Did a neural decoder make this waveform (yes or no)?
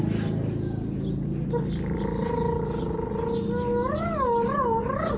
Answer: no